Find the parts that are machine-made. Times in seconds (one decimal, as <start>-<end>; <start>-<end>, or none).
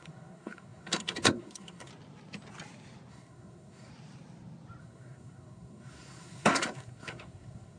0.0-1.9; 3.1-3.9; 4.8-7.8